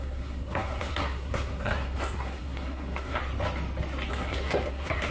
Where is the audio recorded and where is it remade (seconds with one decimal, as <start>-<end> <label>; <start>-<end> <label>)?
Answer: 0.0-3.2 remade; 3.2-4.1 recorded; 4.1-5.1 remade